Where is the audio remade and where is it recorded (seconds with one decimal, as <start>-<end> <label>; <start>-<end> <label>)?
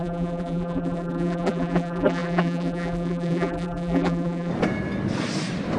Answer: 0.0-4.5 remade; 4.5-5.8 recorded